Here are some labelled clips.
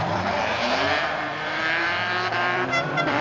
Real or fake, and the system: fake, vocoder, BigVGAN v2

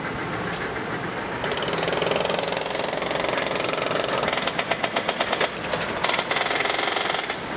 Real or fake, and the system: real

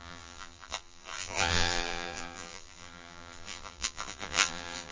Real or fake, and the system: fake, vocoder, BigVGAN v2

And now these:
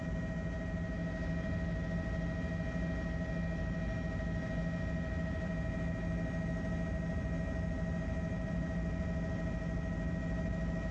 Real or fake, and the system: real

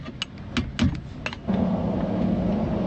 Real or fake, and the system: real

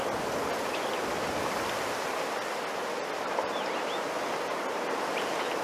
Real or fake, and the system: real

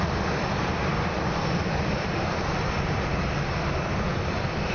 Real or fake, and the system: fake, vocoder, BigVGAN v2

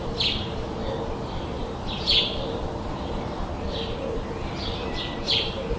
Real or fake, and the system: fake, vocoder, BigVGAN v2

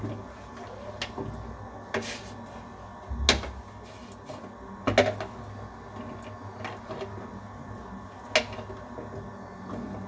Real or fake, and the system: real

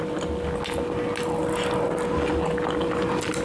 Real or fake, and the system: real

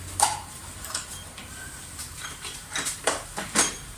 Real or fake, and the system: fake, vocoder, BigVGAN v2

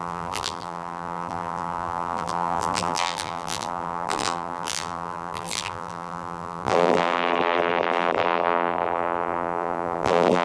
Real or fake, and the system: fake, vocoder, BigVGAN v2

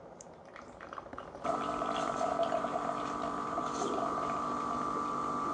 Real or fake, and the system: fake, vocoder, BigVGAN v2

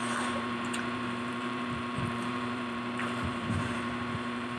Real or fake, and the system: fake, vocoder, BigVGAN v2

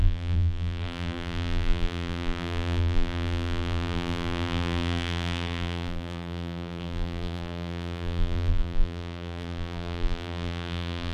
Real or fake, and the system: fake, vocoder, BigVGAN v2